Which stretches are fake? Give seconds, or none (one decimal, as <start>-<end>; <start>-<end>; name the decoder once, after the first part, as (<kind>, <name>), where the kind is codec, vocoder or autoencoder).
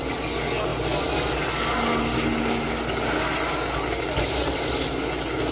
none